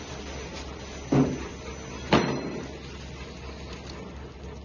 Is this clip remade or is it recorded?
recorded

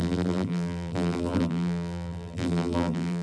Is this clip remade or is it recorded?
remade